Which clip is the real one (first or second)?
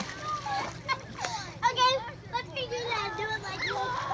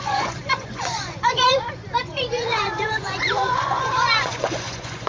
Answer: first